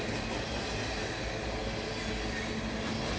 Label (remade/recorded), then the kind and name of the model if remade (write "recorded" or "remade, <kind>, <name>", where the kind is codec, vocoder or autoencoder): recorded